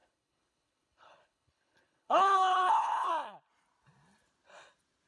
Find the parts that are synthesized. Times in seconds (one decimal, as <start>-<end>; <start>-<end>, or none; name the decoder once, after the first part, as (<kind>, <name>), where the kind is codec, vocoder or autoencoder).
0.0-3.1 (codec, HILCodec)